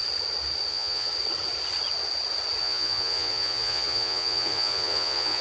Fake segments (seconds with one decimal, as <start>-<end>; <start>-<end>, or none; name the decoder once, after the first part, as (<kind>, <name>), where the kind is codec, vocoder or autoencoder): 0.7-1.1 (vocoder, Vocos); 2.6-5.4